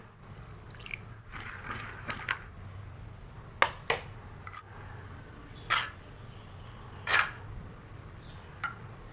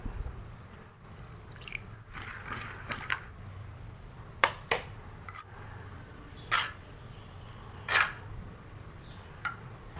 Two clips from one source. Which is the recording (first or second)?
first